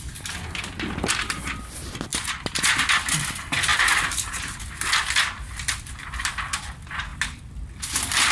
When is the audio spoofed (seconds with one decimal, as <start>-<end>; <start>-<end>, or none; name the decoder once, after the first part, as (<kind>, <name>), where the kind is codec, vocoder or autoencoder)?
3.7-4.4 (vocoder, BigVGAN v2)